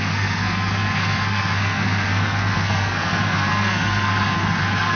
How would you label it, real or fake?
fake